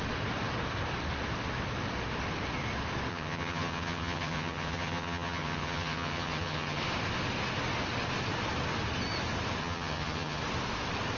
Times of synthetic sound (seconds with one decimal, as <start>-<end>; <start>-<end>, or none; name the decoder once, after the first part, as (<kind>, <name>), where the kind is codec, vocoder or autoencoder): 3.1-6.8 (vocoder, HiFi-GAN); 9.6-10.4